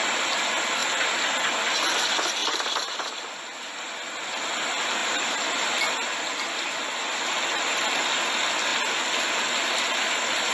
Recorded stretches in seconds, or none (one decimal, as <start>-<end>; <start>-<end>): 0.0-10.5